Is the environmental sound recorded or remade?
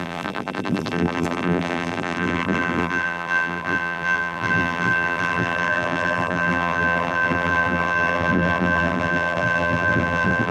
remade